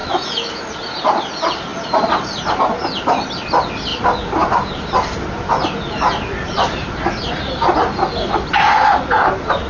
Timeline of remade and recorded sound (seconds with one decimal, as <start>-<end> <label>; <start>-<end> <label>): 0.0-0.6 remade; 0.6-9.7 recorded